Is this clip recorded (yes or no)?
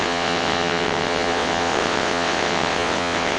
no